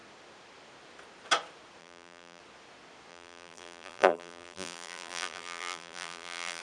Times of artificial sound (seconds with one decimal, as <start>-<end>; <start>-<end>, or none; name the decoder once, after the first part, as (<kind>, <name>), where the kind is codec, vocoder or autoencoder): 1.8-2.4 (vocoder, BigVGAN v2); 3.1-6.6